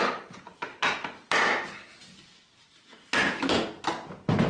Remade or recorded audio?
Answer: recorded